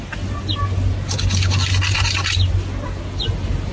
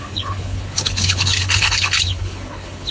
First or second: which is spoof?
second